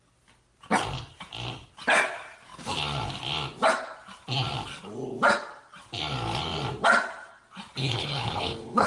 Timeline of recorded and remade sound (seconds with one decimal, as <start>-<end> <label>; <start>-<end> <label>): 0.0-7.8 recorded; 7.8-8.9 remade